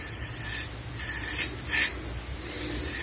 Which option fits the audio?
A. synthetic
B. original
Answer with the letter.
B